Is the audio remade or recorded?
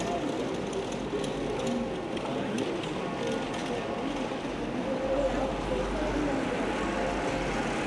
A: recorded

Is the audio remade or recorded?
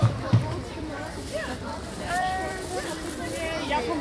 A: remade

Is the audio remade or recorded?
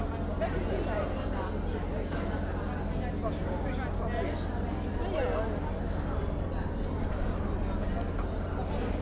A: recorded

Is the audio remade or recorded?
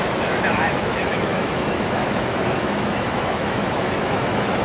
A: remade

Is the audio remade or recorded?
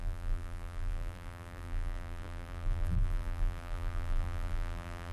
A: remade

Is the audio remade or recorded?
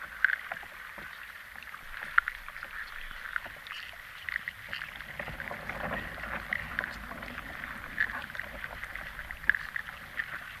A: recorded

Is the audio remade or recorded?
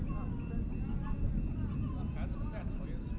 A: recorded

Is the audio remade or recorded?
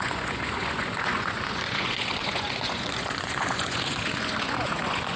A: remade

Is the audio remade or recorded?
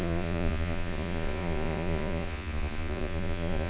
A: remade